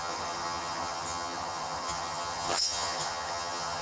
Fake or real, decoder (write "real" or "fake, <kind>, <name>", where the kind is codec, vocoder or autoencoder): fake, vocoder, HiFi-GAN